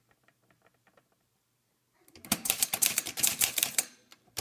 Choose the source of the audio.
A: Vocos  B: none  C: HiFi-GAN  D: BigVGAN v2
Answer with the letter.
D